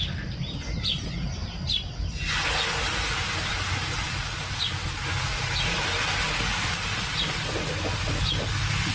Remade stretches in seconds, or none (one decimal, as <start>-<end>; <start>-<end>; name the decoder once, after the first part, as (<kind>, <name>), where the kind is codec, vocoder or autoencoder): none